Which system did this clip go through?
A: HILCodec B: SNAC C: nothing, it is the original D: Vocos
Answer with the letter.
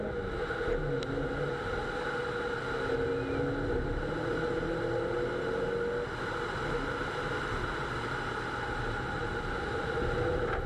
C